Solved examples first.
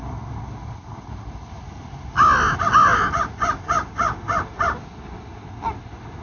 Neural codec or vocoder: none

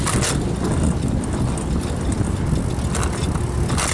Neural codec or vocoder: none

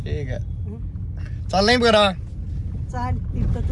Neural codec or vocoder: none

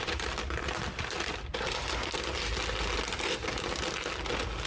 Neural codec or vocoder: none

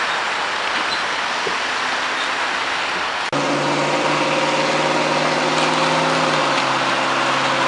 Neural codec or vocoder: none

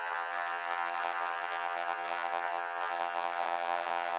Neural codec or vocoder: vocoder, HiFi-GAN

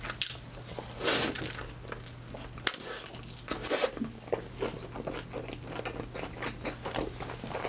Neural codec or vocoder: none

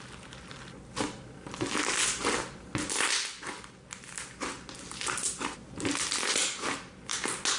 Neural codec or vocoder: none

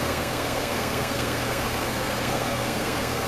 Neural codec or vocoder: codec, SNAC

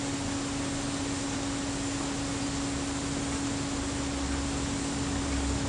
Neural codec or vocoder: none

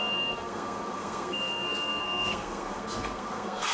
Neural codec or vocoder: codec, SNAC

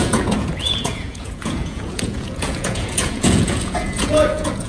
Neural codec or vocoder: vocoder, Vocos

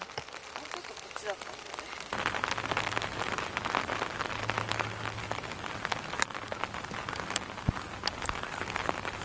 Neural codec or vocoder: none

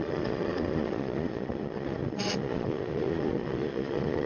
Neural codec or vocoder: vocoder, Vocos